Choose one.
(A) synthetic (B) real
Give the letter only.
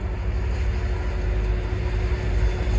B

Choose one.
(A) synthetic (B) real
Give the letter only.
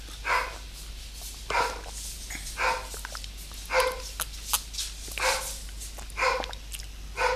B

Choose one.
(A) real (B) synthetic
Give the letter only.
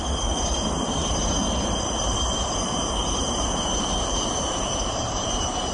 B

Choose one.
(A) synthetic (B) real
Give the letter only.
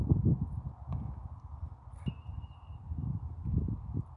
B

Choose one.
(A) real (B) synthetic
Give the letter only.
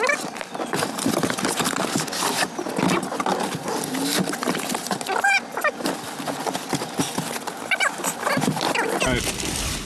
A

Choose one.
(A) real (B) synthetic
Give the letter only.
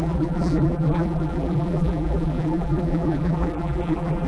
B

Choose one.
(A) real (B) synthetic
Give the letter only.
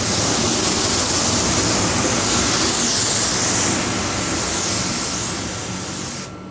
A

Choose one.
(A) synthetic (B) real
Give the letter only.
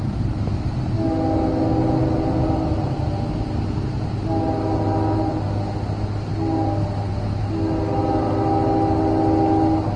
B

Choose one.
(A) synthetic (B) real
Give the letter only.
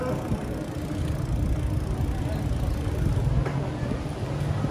B